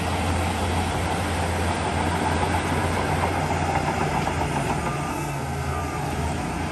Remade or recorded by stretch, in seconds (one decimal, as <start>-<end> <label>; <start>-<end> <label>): 0.0-5.1 recorded; 5.1-5.8 remade; 5.8-6.7 recorded